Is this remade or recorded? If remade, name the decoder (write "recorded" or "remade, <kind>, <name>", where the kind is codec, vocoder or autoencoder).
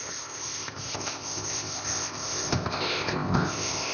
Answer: remade, codec, ZipCodec